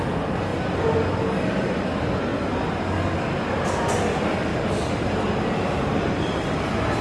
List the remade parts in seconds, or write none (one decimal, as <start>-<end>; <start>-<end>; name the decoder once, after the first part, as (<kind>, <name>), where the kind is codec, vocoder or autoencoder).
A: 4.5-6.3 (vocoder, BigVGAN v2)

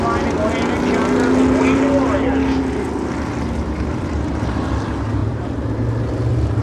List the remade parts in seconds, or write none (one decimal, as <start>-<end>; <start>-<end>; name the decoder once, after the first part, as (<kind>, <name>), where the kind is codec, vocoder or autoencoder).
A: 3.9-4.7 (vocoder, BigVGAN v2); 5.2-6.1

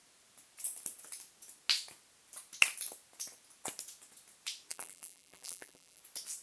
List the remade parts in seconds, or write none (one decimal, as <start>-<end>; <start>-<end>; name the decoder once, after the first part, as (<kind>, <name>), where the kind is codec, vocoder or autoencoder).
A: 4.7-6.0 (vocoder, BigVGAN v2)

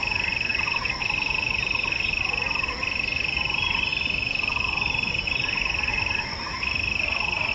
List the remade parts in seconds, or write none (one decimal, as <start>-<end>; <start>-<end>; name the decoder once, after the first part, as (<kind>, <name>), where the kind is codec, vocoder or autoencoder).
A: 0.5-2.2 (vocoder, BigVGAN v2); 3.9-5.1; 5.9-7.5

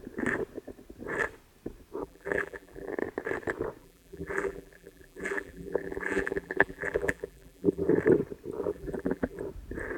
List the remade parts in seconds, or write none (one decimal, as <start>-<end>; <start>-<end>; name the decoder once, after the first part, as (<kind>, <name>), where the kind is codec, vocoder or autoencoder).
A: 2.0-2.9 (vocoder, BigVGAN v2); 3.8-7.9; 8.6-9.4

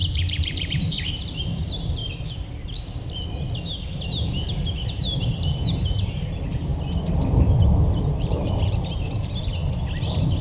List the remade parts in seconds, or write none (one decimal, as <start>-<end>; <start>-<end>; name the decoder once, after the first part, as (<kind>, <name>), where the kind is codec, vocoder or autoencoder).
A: 0.0-2.0 (vocoder, BigVGAN v2); 4.9-6.7; 7.4-9.5